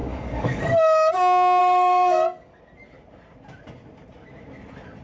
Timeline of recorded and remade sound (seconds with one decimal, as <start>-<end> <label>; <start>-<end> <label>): 0.0-1.1 remade; 1.1-1.6 recorded; 1.6-2.6 remade; 2.6-5.0 recorded